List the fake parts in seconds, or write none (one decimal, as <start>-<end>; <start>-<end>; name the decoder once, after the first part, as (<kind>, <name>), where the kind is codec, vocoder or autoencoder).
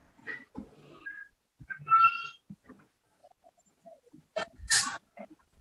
none